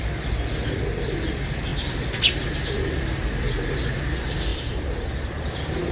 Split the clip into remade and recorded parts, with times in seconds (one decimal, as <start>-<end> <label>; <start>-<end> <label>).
0.0-4.5 recorded; 4.5-5.1 remade; 5.1-5.9 recorded